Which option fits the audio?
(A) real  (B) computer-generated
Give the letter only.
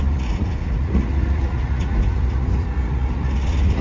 B